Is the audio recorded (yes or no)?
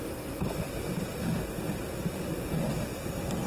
yes